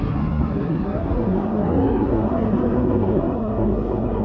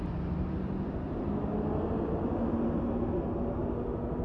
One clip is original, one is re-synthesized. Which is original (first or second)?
second